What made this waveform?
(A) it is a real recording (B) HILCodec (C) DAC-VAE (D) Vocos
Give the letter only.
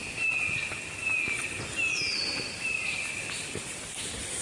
A